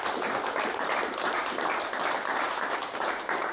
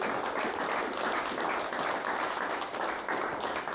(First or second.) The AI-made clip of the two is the first